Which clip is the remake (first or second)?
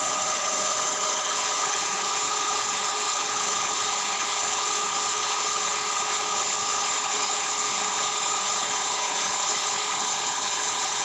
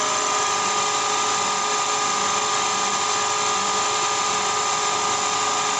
first